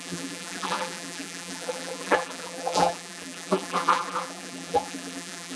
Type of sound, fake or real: fake